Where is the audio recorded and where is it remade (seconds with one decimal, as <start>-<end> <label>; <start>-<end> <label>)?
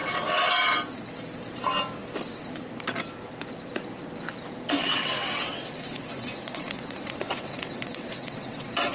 0.0-4.7 recorded; 4.7-8.9 remade